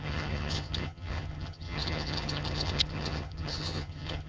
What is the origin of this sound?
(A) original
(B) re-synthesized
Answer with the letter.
B